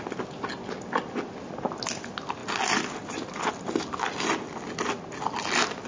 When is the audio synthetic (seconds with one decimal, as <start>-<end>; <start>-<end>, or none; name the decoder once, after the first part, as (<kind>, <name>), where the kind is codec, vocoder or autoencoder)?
none